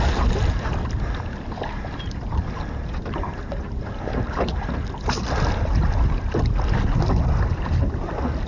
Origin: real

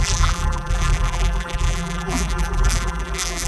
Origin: fake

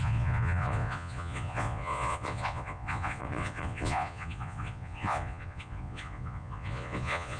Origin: fake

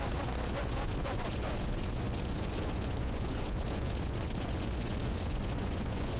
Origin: fake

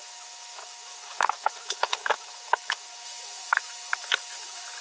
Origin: fake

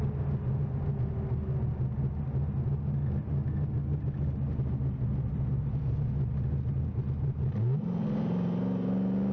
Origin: real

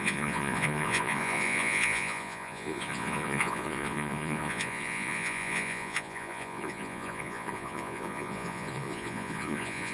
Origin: fake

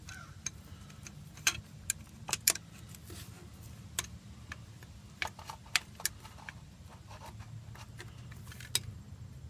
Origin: real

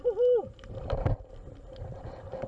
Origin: real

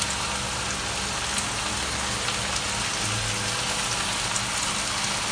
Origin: real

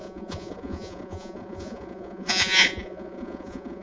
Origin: fake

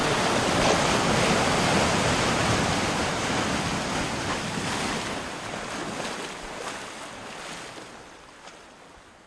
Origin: real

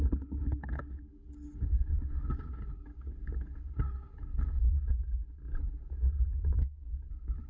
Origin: fake